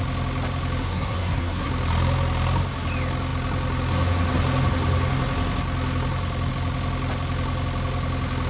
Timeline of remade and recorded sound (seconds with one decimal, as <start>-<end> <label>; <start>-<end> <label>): 0.0-0.8 recorded; 0.8-1.7 remade; 1.7-8.5 recorded